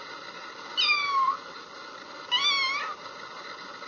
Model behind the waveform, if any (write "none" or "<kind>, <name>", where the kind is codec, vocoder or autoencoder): none